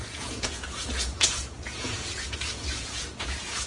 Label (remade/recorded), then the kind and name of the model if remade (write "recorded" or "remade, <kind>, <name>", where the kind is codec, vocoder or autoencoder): remade, vocoder, Vocos